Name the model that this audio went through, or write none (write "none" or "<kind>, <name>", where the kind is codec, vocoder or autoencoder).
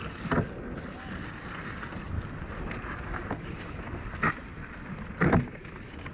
none